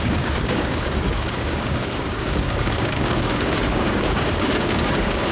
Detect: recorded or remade remade